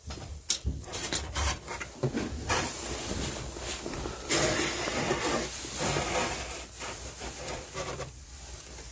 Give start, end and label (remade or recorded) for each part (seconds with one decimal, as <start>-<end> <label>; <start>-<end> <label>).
0.0-8.9 remade